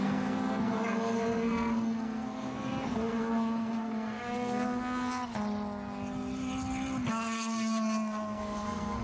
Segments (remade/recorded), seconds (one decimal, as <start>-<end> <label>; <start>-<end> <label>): 0.0-5.3 remade; 5.3-7.1 recorded; 7.1-9.0 remade